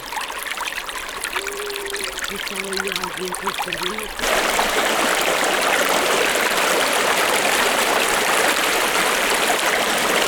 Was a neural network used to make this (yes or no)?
yes